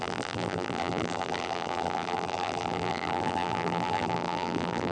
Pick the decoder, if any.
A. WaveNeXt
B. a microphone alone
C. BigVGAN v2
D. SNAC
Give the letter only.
C